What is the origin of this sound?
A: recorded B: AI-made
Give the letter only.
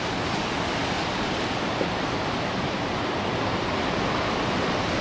A